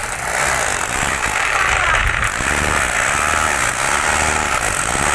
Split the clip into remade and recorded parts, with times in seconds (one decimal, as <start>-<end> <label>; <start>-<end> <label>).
0.0-5.1 recorded